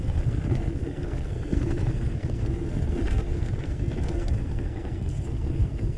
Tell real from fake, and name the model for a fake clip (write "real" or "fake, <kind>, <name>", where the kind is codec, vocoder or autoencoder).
fake, codec, SNAC